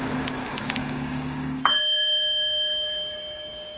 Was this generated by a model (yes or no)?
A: yes